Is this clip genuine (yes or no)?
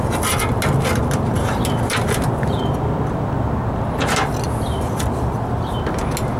yes